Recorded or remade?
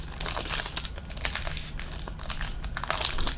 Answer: recorded